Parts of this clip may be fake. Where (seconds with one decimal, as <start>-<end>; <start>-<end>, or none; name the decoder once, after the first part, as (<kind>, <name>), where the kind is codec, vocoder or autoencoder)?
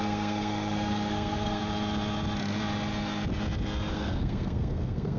0.0-1.6 (codec, SNAC); 3.9-5.2